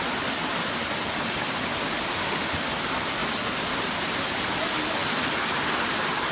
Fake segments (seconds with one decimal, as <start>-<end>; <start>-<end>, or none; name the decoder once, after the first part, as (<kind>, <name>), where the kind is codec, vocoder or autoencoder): 2.1-2.7 (autoencoder, DAC-VAE)